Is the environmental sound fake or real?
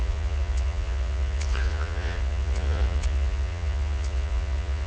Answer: fake